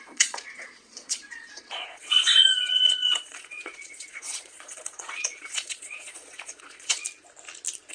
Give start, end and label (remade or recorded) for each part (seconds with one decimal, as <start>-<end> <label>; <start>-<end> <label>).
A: 0.0-7.0 remade; 7.0-7.9 recorded